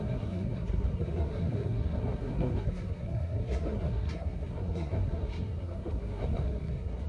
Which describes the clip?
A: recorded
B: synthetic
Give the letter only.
B